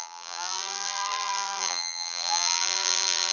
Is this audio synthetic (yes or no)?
yes